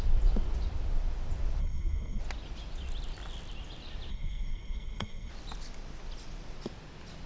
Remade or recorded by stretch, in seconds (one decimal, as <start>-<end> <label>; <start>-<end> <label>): 0.0-1.6 recorded; 1.6-2.2 remade; 2.2-4.1 recorded; 4.1-5.3 remade; 5.3-7.3 recorded